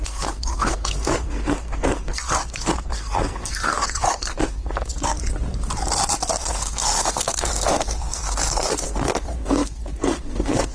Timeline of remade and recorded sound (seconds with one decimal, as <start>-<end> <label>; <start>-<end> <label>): 0.0-5.2 remade; 5.2-6.4 recorded; 6.4-10.7 remade